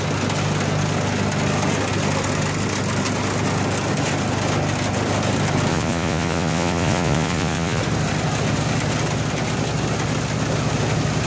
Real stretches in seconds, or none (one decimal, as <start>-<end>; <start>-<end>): 0.0-5.7; 7.8-11.3